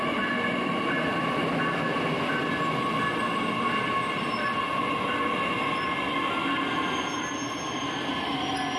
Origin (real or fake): real